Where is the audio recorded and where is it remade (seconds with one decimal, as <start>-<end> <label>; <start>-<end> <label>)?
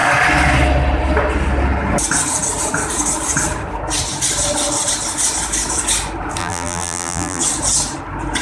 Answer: 0.0-6.4 recorded; 6.4-7.4 remade; 7.4-8.4 recorded